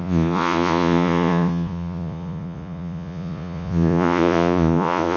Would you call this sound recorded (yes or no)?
no